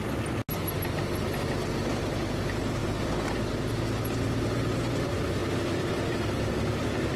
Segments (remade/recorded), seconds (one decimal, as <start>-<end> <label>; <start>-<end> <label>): 0.0-7.2 recorded